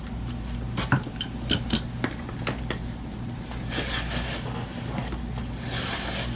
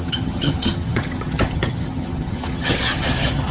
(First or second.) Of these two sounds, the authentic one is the first